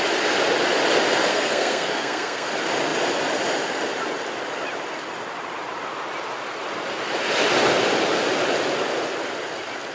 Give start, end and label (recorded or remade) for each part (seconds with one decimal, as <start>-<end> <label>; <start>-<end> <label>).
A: 0.0-1.3 recorded; 1.3-2.5 remade; 2.5-9.9 recorded